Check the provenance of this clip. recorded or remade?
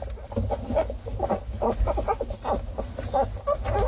recorded